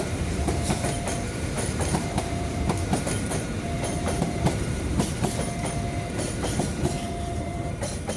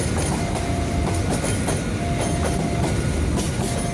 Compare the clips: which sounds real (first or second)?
second